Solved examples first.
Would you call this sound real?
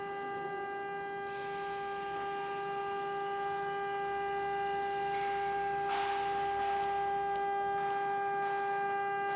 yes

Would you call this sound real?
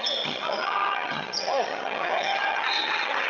no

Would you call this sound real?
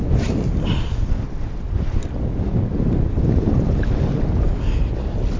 yes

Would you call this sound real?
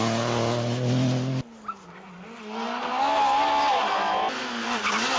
yes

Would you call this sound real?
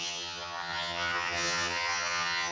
no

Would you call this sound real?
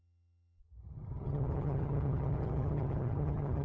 no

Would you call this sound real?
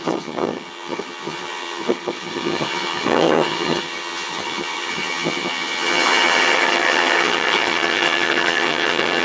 no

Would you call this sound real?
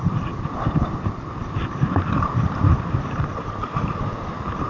yes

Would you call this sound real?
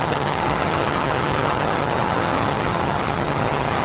no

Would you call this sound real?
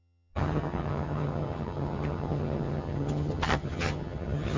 no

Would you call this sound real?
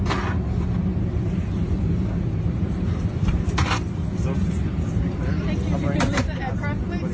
yes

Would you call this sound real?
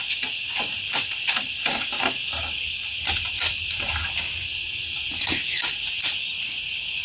yes